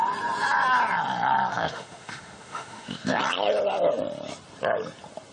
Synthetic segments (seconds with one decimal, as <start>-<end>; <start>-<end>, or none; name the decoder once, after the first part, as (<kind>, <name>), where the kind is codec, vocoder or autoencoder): 1.5-3.2 (autoencoder, DAC-VAE)

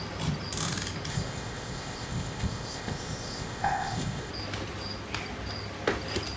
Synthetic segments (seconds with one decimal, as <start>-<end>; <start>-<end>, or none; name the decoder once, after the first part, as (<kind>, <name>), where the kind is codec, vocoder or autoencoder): 1.1-4.3 (codec, ZipCodec)

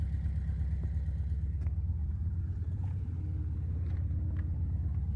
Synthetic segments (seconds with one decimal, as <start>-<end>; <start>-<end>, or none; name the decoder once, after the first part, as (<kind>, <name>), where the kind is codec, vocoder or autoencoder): 2.0-3.1 (vocoder, Vocos)

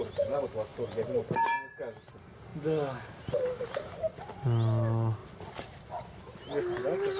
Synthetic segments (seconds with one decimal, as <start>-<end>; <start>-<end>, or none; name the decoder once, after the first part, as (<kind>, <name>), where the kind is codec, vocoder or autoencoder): none

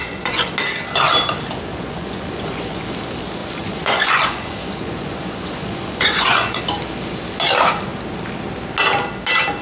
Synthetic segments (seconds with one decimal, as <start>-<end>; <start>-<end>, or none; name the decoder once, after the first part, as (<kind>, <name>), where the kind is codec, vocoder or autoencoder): 0.0-0.5 (vocoder, Vocos); 1.7-2.8; 3.4-6.6

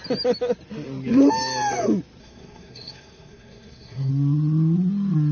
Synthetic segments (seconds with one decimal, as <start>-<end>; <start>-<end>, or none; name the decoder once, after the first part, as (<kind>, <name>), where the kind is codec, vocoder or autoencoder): 2.2-4.1 (codec, SNAC)